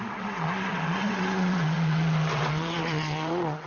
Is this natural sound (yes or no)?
no